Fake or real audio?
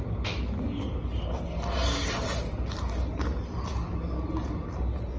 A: real